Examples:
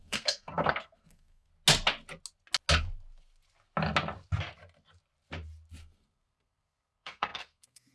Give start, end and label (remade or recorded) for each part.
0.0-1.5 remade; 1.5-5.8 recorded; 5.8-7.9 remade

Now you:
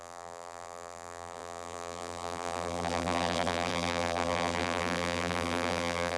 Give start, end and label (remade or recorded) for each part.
0.0-6.2 remade

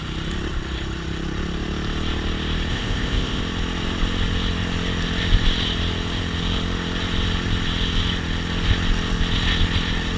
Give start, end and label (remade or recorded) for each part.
0.0-2.7 recorded; 2.7-3.4 remade; 3.4-10.2 recorded

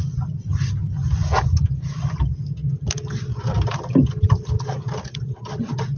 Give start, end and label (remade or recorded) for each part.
0.0-6.0 recorded

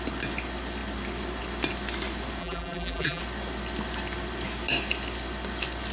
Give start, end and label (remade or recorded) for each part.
0.0-2.4 recorded; 2.4-3.2 remade; 3.2-5.9 recorded

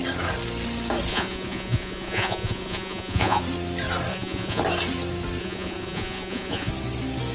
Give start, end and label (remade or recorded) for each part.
0.0-1.1 recorded; 1.1-3.4 remade; 3.4-4.1 recorded; 4.1-4.6 remade; 4.6-5.4 recorded; 5.4-6.7 remade; 6.7-7.3 recorded